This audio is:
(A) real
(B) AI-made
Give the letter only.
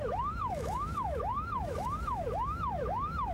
B